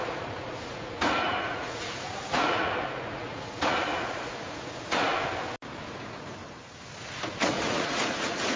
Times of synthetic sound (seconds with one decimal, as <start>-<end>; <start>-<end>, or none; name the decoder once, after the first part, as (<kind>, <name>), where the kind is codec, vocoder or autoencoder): 0.0-5.1 (vocoder, Vocos); 5.9-6.4; 7.4-8.6